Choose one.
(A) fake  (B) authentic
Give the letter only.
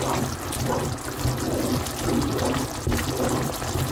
B